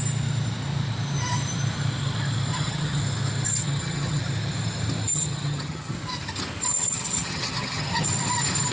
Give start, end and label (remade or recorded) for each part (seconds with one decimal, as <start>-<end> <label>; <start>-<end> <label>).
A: 0.0-2.5 recorded; 2.5-3.0 remade; 3.0-3.6 recorded; 3.6-4.2 remade; 4.2-5.1 recorded; 5.1-5.9 remade; 5.9-6.7 recorded; 6.7-8.1 remade; 8.1-8.7 recorded